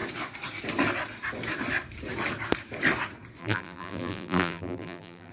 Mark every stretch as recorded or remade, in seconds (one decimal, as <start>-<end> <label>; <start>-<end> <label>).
0.0-3.4 recorded; 3.4-5.3 remade